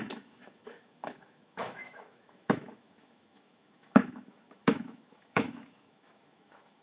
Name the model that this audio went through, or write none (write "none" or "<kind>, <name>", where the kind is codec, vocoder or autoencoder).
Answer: autoencoder, DAC-VAE